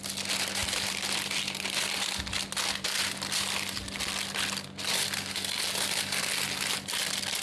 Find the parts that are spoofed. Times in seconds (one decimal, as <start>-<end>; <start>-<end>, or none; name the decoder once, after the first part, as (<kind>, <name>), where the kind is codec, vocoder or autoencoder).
none